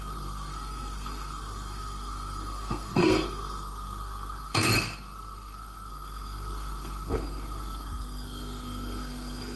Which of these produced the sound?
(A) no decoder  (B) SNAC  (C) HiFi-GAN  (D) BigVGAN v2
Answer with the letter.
B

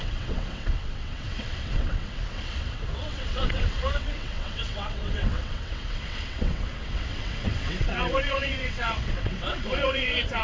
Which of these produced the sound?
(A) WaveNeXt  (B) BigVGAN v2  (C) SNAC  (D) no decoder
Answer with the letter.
A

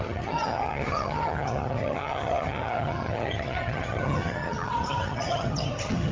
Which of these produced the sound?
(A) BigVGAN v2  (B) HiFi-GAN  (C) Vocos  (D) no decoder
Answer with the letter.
B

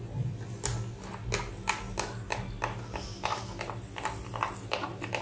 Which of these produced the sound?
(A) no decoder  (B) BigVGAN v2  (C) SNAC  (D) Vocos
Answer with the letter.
A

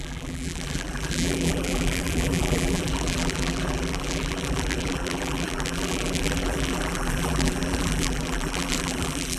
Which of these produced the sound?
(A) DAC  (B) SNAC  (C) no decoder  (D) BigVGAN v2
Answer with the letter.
D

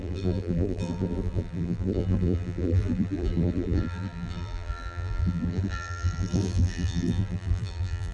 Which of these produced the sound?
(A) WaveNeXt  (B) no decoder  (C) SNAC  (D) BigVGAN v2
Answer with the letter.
D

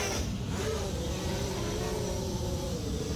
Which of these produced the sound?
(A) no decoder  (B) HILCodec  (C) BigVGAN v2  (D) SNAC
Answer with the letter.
A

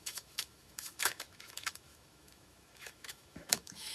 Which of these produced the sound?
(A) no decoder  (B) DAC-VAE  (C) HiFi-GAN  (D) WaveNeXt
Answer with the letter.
B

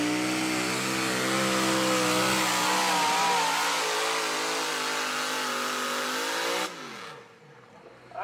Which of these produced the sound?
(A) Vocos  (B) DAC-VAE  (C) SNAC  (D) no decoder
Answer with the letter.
D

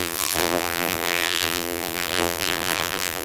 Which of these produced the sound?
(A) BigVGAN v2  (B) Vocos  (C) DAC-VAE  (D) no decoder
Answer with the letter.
A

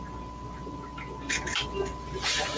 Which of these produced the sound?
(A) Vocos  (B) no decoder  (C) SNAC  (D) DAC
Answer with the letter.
B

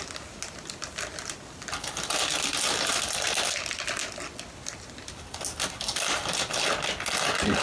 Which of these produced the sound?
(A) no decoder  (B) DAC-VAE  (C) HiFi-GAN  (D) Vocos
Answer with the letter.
A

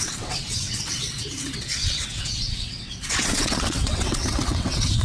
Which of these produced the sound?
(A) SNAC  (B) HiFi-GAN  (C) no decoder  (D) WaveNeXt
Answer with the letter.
D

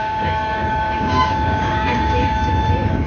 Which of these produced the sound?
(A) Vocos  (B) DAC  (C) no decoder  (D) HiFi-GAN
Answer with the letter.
B